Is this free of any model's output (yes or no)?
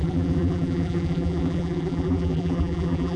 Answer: no